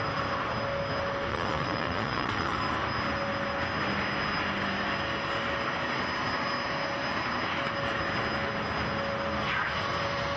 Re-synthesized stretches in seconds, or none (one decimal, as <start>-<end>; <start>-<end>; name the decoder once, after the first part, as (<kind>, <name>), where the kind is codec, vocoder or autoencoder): 1.3-2.6 (vocoder, Vocos)